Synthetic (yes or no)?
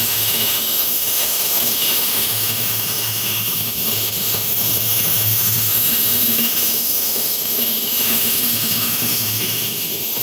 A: yes